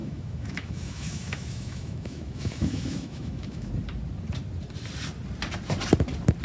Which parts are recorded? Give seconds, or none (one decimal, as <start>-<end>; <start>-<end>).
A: 3.7-6.4